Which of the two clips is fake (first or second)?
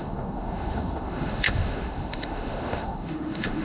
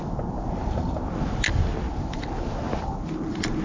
first